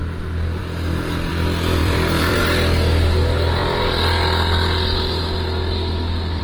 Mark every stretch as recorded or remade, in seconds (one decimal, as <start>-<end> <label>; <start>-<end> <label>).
0.0-1.8 recorded; 1.8-2.4 remade; 2.4-6.4 recorded